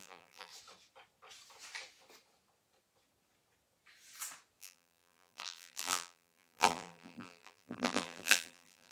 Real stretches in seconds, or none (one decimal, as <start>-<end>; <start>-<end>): 0.5-4.6